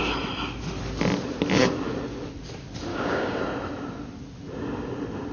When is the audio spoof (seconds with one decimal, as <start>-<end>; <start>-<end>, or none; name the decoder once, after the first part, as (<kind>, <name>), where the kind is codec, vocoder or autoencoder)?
2.9-3.4 (codec, DAC)